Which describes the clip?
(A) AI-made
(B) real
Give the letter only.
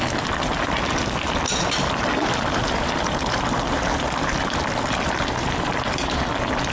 A